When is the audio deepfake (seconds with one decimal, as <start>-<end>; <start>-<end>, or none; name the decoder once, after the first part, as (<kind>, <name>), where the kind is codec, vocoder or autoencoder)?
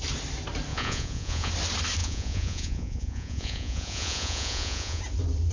0.7-1.5 (vocoder, Vocos); 2.0-5.0